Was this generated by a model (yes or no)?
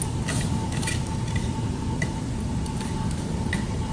no